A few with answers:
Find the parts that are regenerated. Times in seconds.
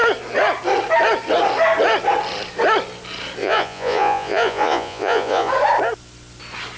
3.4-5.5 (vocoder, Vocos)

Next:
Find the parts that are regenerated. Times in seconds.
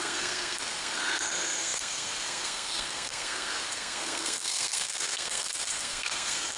0.0-6.6 (codec, SNAC)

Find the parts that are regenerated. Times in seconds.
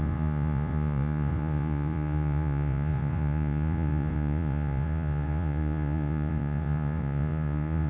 0.0-7.9 (vocoder, Vocos)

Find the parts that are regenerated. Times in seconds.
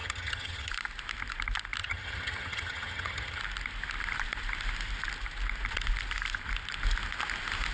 0.0-0.7 (vocoder, HiFi-GAN); 1.8-3.4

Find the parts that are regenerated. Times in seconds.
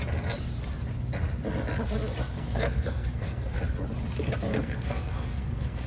2.2-3.6 (codec, SNAC); 4.5-5.9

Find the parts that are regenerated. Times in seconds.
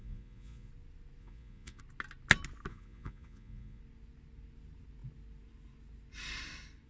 0.0-0.7 (vocoder, Vocos); 1.2-1.8; 2.7-3.8